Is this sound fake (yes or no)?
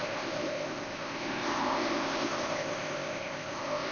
yes